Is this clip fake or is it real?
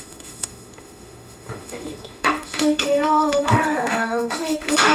fake